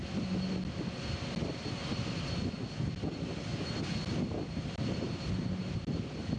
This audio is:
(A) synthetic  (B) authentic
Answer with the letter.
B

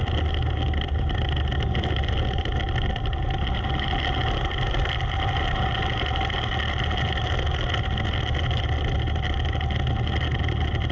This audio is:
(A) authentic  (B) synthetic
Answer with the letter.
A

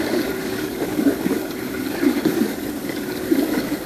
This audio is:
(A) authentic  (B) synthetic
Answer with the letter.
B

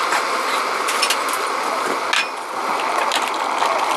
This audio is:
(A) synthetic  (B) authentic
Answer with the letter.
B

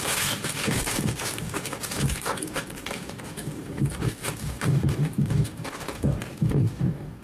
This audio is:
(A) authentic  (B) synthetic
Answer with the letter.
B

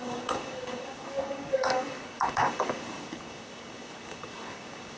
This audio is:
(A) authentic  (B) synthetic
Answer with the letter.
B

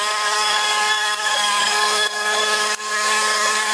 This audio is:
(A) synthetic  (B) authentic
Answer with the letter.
A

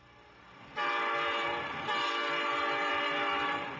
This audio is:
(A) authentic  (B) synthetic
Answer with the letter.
A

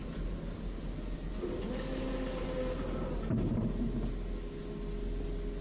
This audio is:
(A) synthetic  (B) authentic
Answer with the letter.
B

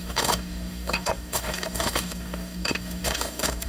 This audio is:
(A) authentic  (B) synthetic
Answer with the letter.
B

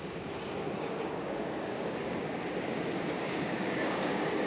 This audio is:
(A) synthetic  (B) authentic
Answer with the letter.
A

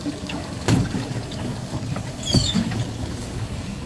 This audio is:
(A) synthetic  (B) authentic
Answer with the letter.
A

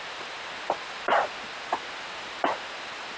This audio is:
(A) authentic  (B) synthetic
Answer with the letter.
A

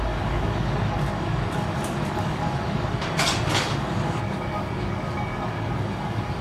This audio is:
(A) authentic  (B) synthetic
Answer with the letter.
B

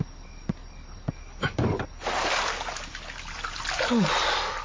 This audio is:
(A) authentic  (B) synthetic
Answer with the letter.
A